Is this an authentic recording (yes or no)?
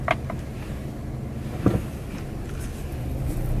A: yes